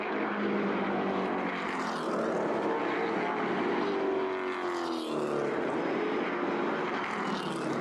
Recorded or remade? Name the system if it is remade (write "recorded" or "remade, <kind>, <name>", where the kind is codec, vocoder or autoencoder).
recorded